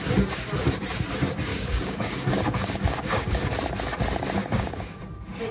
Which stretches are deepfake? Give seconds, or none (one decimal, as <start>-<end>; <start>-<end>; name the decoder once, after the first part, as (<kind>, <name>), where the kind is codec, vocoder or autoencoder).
1.5-3.5 (codec, DAC); 4.4-5.0